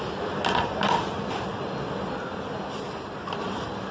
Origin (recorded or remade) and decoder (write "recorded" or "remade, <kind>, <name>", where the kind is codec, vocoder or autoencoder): recorded